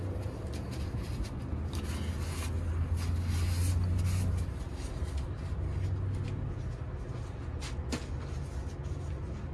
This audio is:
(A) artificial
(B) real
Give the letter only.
B